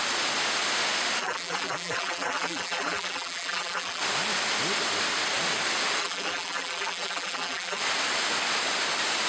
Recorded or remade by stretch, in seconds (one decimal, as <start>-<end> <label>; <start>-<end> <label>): 0.0-1.2 recorded; 1.2-4.0 remade; 4.0-6.0 recorded; 6.0-7.8 remade; 7.8-9.3 recorded